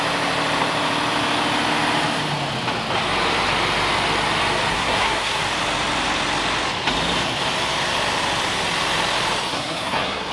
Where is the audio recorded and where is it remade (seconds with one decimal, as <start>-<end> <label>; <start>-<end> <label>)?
0.0-4.7 recorded; 4.7-5.4 remade; 5.4-9.5 recorded; 9.5-10.3 remade